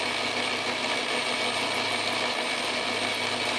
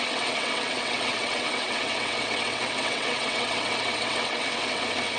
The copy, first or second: second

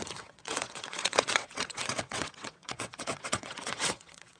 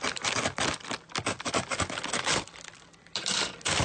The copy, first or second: first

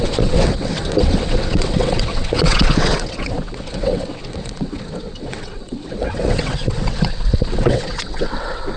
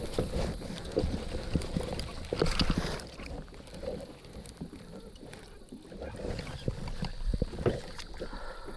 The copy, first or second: first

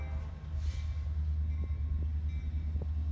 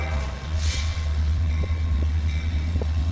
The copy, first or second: second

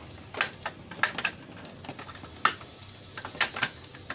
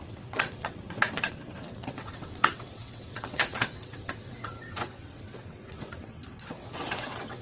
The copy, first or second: second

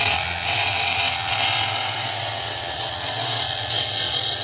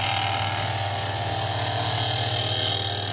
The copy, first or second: first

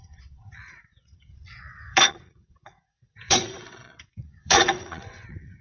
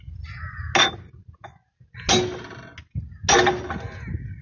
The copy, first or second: first